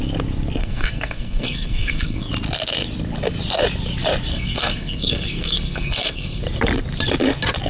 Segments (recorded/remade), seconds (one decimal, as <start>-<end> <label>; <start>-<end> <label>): 0.0-0.6 recorded; 0.6-2.3 remade; 2.3-4.3 recorded; 4.3-6.4 remade; 6.4-7.7 recorded